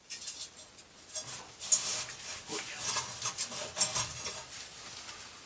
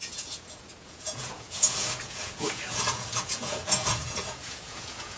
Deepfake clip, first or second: second